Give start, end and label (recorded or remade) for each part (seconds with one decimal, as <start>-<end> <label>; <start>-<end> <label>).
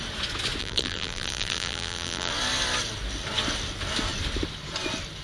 0.0-0.6 recorded; 0.6-2.3 remade; 2.3-5.2 recorded